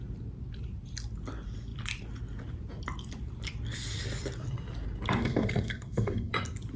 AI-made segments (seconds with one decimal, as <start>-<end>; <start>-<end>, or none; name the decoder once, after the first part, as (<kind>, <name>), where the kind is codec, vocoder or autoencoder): 5.2-6.3 (codec, SNAC)